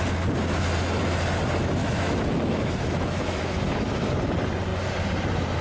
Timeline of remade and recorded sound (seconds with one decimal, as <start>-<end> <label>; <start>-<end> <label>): 0.0-1.8 recorded; 1.8-4.1 remade; 4.1-5.6 recorded